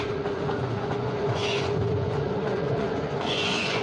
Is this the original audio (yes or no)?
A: no